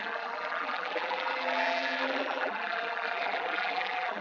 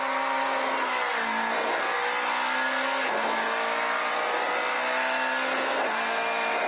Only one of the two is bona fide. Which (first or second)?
second